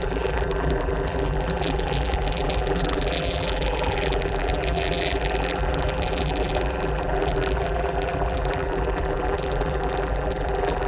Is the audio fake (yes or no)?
yes